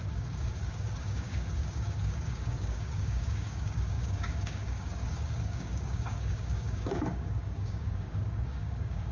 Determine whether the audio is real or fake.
fake